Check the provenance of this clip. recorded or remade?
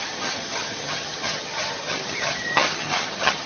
remade